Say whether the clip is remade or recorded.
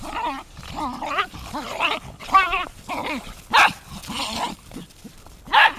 remade